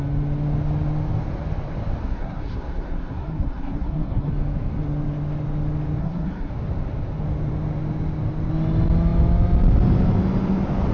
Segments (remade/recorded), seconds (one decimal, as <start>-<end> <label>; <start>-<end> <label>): 0.0-2.0 recorded; 2.0-4.3 remade; 4.3-6.0 recorded; 6.0-6.5 remade; 6.5-10.9 recorded